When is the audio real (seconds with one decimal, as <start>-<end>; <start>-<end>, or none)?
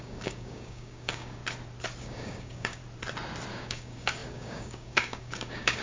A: 1.4-2.0; 2.8-3.5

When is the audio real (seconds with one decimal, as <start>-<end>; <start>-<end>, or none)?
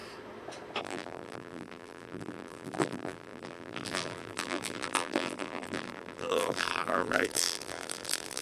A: 0.0-0.8